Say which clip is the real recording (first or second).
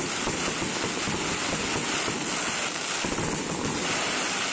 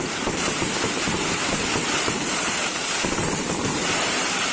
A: first